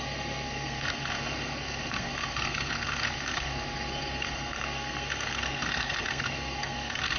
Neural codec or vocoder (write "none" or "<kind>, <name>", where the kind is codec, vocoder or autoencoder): codec, SNAC